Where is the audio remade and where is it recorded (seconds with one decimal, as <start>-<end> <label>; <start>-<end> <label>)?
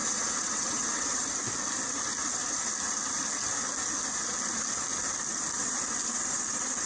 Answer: 0.0-1.2 remade; 1.2-6.9 recorded